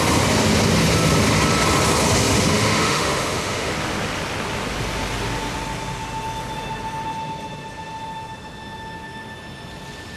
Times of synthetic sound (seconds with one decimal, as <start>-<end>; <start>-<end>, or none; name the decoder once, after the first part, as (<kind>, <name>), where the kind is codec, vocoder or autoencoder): 2.3-3.7 (autoencoder, DAC-VAE)